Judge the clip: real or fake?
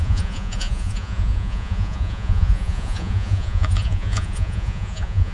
fake